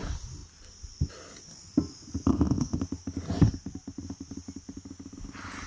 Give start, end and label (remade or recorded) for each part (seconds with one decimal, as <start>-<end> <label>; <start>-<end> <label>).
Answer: 0.0-2.3 recorded; 2.3-2.8 remade; 2.8-5.7 recorded